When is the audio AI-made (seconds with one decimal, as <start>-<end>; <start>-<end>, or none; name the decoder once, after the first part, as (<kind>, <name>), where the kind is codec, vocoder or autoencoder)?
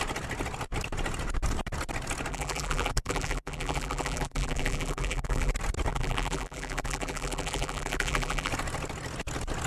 2.3-5.5 (vocoder, BigVGAN v2); 5.9-8.5